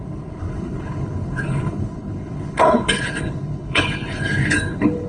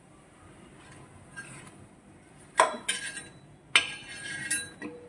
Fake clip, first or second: first